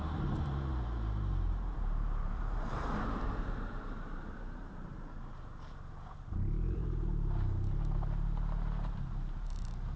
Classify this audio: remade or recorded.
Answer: remade